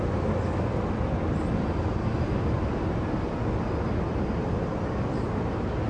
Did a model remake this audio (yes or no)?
no